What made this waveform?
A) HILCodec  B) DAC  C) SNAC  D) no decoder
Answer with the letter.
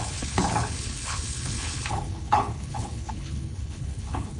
A